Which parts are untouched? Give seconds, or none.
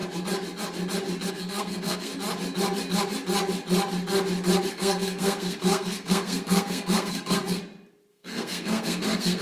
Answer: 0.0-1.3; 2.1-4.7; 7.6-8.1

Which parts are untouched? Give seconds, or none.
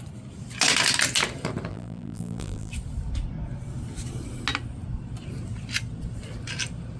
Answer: 0.0-1.7; 2.7-7.0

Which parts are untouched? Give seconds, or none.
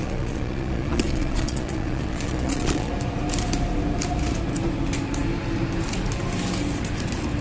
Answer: 2.9-7.4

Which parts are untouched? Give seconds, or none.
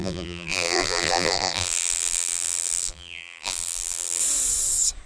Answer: 4.2-5.1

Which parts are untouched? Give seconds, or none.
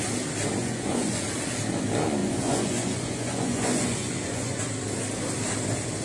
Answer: 0.0-0.6; 1.2-2.2; 4.6-6.0